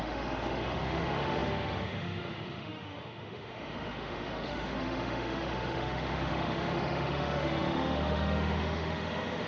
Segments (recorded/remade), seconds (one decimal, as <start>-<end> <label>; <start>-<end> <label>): 0.0-9.5 remade